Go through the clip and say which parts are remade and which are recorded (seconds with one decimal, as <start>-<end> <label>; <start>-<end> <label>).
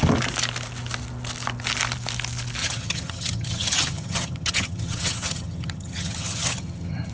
0.0-2.6 recorded; 2.6-7.1 remade